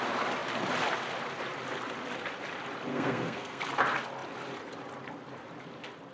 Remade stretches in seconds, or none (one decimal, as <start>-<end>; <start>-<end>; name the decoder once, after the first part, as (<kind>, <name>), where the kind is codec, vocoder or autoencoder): 2.9-3.6 (codec, SNAC)